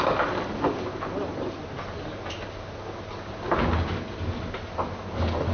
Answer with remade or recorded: recorded